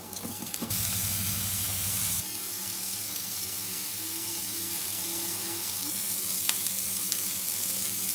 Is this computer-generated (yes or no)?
yes